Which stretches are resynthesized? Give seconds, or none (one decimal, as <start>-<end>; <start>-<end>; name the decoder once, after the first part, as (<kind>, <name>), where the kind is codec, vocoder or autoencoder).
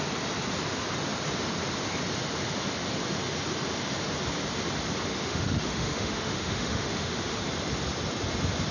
5.1-7.4 (autoencoder, DAC-VAE)